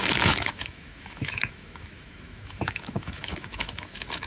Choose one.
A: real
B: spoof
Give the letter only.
B